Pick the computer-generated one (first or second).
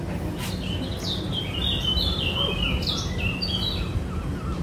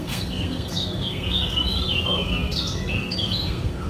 second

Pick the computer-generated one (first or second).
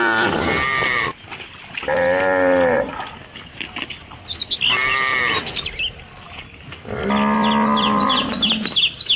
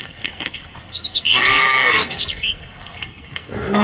second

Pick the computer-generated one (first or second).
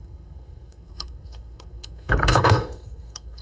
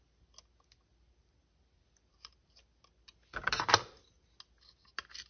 first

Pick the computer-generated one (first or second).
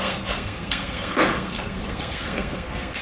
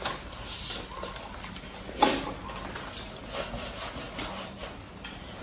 first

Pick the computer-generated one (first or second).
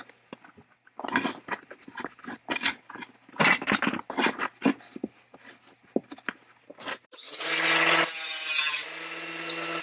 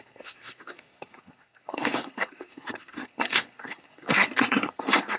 second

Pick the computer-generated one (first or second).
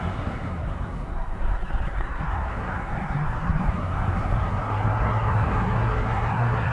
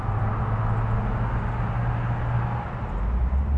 first